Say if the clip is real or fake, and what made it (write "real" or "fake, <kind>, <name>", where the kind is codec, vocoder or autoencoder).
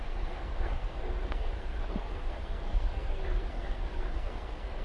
fake, codec, SNAC